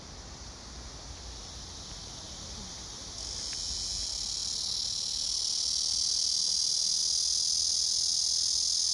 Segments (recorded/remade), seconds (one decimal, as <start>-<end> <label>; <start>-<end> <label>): 0.0-8.9 recorded

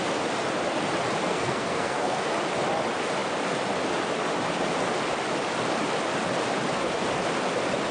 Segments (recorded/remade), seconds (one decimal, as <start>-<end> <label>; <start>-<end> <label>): 0.0-1.2 recorded; 1.2-2.3 remade; 2.3-7.9 recorded

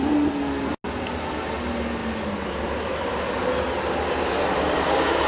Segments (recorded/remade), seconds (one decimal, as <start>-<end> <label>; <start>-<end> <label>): 0.0-5.3 recorded

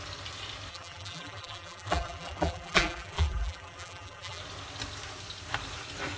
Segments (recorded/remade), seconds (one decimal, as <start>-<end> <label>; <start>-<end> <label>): 0.0-0.7 recorded; 0.7-4.4 remade; 4.4-6.2 recorded